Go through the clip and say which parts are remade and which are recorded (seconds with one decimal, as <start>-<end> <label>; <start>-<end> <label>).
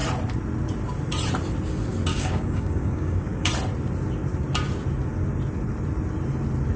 0.0-2.1 recorded; 2.1-3.5 remade; 3.5-6.8 recorded